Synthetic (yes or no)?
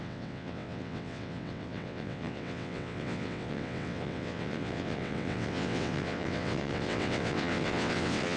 yes